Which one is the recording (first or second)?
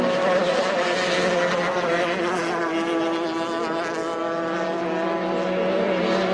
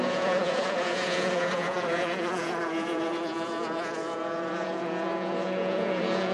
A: first